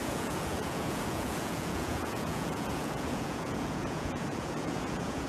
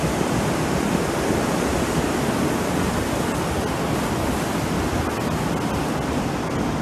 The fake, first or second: first